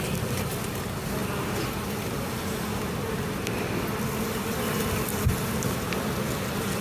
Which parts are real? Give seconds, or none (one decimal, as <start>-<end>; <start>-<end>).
0.0-6.8